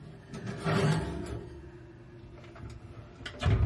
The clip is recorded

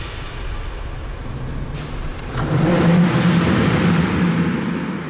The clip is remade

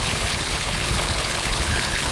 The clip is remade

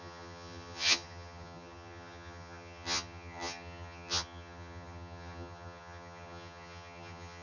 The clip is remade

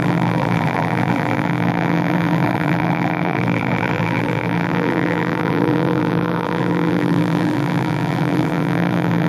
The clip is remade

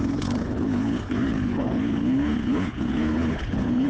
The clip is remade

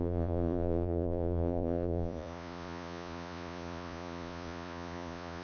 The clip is remade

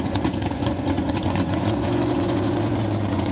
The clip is remade